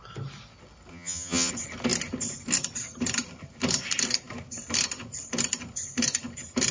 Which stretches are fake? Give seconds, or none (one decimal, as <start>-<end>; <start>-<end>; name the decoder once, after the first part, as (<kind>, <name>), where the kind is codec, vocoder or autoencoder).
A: 0.9-1.5 (vocoder, HiFi-GAN)